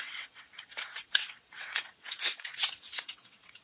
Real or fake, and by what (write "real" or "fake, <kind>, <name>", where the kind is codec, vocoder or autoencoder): fake, vocoder, WaveNeXt